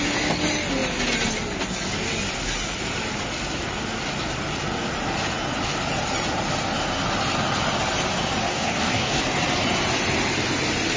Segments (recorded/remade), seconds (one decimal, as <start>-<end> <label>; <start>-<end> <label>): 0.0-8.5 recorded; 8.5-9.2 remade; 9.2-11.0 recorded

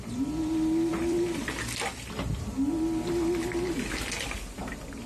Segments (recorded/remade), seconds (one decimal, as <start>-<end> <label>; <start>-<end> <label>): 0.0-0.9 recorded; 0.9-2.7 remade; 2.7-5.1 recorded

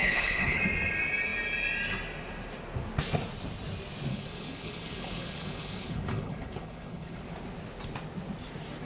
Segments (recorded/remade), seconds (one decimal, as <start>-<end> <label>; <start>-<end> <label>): 0.0-0.6 remade; 0.6-4.1 recorded; 4.1-7.2 remade; 7.2-8.9 recorded